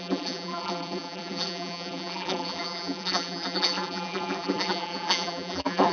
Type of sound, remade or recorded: remade